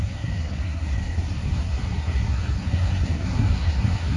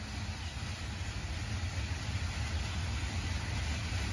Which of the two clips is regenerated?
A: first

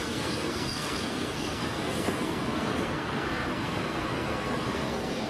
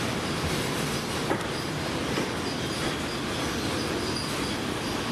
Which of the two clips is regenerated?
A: first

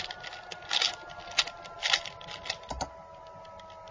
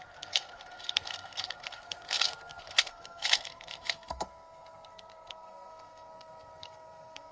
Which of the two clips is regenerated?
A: second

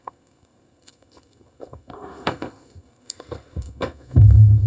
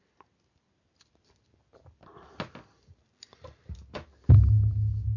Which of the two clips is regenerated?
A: first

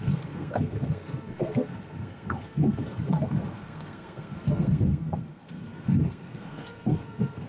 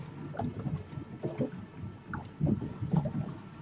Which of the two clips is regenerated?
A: first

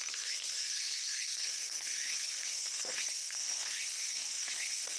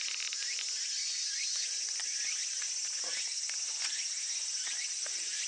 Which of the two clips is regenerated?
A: first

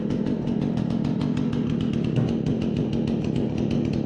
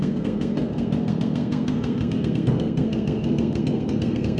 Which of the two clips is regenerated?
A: second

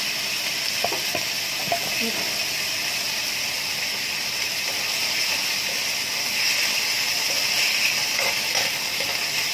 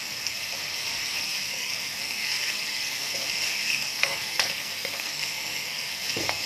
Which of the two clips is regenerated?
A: second